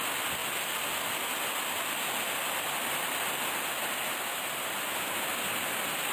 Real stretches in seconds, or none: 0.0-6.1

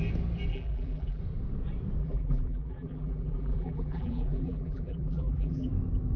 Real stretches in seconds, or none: 0.0-0.5; 1.2-2.0; 5.7-6.2

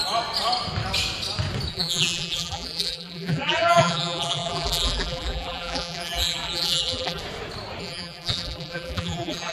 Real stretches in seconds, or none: 0.0-1.7; 7.2-7.8

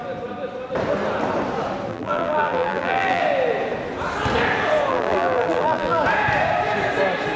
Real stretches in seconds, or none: 0.0-1.9; 3.2-4.9; 6.0-7.4

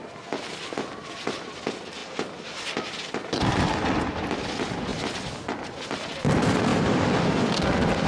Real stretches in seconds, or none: 2.0-4.2; 6.7-8.1

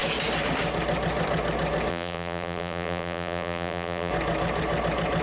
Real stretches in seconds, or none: 0.0-1.9; 4.1-5.2

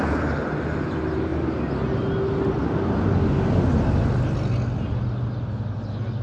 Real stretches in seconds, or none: 0.0-6.2

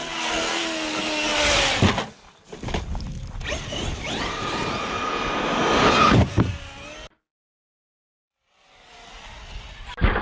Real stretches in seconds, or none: 0.0-10.2